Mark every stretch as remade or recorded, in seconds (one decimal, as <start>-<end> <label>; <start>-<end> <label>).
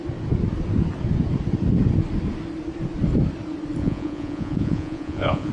0.0-3.8 recorded; 3.8-5.5 remade